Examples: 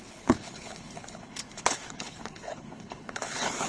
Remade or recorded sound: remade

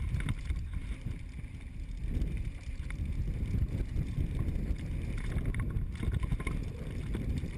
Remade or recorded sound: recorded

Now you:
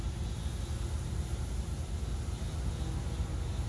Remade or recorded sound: recorded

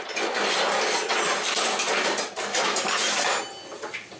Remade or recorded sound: recorded